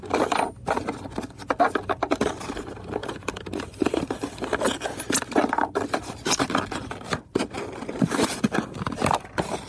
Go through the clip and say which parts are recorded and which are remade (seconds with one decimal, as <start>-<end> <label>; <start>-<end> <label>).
0.0-9.7 remade